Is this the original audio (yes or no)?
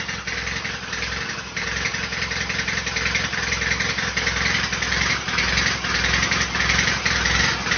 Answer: yes